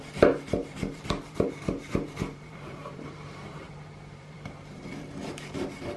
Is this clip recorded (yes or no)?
no